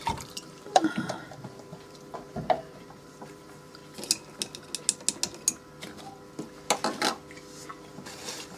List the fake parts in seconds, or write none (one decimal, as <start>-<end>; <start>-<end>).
0.0-3.8; 7.8-8.6